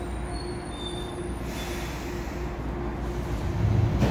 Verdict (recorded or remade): recorded